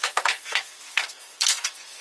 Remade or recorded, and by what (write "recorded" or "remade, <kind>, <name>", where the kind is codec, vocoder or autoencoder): remade, codec, SNAC